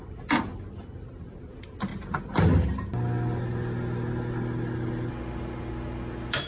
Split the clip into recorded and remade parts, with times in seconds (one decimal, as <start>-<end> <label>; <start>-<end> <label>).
0.0-6.5 recorded